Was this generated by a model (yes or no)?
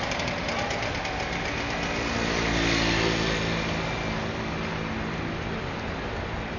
no